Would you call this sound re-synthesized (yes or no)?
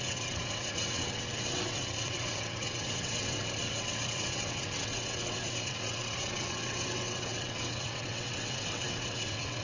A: yes